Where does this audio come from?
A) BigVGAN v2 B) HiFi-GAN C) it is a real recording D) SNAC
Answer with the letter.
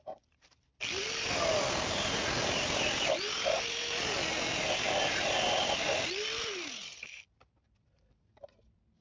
A